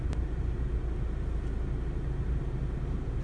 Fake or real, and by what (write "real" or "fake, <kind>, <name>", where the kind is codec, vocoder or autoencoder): real